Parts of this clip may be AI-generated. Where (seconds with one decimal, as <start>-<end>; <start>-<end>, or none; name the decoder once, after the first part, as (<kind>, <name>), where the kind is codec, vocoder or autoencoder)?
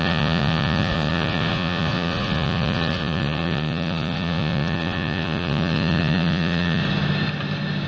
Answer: 0.0-6.8 (vocoder, Vocos)